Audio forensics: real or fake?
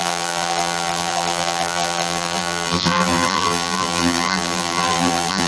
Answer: fake